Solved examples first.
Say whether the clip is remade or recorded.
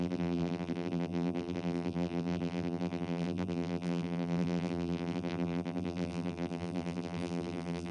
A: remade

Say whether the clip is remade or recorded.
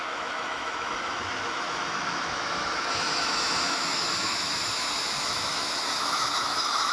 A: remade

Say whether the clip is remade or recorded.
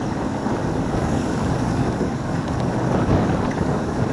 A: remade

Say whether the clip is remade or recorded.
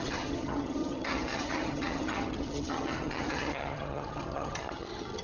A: remade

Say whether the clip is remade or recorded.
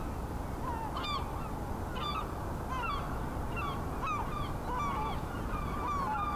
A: recorded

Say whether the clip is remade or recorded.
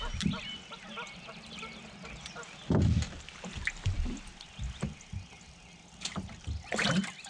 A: recorded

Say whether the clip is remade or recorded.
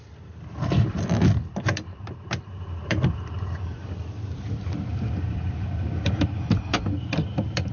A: remade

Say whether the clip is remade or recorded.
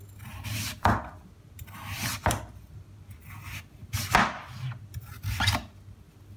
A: recorded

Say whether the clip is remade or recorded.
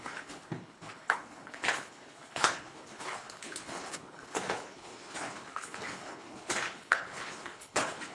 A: remade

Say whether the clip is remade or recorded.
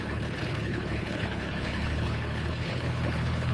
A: remade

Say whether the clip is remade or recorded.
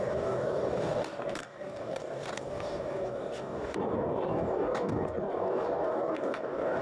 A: remade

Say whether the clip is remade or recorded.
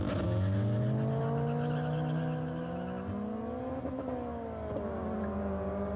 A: recorded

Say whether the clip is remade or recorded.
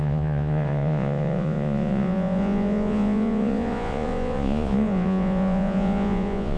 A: remade